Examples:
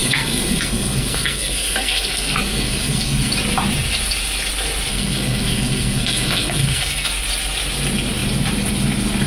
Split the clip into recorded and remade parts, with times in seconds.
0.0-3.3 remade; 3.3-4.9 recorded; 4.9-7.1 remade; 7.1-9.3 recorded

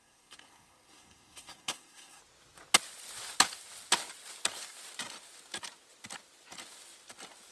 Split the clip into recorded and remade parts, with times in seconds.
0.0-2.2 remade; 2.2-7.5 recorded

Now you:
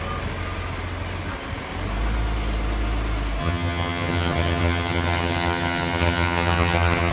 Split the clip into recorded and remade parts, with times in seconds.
0.0-3.4 recorded; 3.4-7.1 remade